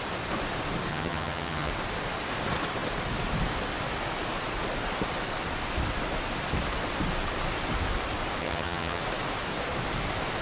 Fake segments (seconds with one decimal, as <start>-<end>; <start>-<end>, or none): 0.9-1.7; 8.4-9.0